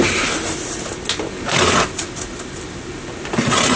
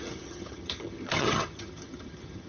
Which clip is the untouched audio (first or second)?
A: first